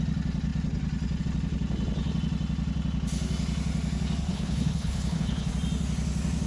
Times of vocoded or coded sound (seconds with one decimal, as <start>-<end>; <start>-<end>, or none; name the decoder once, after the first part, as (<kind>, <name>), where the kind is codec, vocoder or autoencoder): 4.3-5.5 (codec, HILCodec)